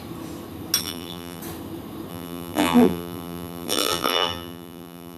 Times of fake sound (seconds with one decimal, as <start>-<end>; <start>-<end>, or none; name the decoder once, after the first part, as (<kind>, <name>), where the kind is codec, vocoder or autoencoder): 0.8-1.4 (vocoder, BigVGAN v2); 2.1-5.2